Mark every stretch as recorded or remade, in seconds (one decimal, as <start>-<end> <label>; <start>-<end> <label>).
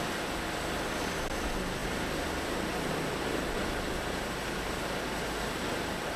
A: 0.0-6.2 recorded